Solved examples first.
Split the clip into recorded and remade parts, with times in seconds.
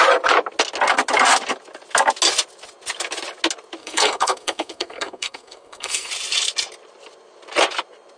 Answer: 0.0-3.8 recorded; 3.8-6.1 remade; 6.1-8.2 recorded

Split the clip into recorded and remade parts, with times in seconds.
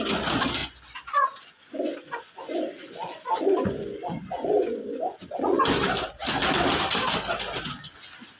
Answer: 0.0-0.6 recorded; 0.6-5.6 remade; 5.6-8.4 recorded